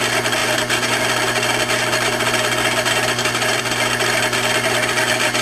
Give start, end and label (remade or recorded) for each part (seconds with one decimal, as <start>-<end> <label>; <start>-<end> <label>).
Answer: 0.0-5.4 remade